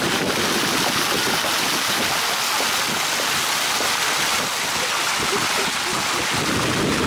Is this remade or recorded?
recorded